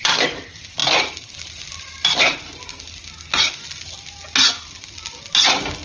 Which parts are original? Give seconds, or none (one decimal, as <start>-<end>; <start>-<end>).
0.0-5.8